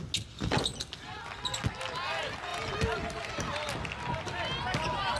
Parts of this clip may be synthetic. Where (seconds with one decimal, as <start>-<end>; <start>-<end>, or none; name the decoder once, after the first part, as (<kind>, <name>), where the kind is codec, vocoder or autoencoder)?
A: none